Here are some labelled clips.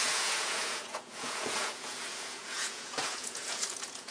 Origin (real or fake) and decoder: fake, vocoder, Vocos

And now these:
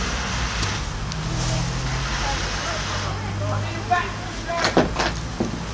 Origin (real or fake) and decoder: real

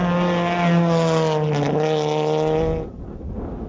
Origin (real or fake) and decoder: real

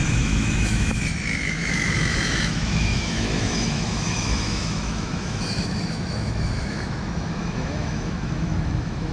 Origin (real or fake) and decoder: fake, autoencoder, DAC-VAE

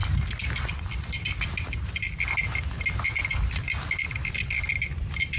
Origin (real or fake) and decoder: real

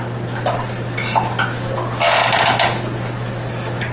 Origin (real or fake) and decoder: real